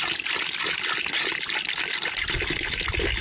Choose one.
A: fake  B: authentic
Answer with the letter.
B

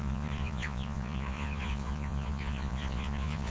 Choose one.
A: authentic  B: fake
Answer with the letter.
B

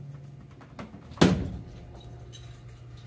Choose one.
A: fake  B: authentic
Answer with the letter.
B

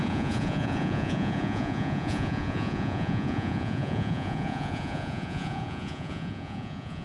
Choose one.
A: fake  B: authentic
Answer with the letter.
A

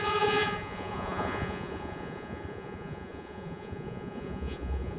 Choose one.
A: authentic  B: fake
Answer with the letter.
B